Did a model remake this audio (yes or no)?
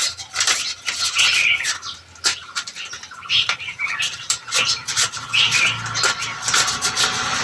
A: no